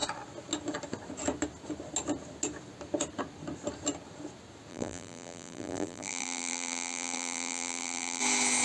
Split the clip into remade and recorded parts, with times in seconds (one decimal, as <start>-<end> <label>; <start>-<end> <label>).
0.0-4.7 recorded; 4.7-8.2 remade; 8.2-8.6 recorded